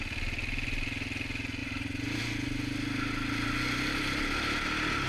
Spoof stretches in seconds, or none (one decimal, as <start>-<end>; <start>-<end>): 1.6-2.2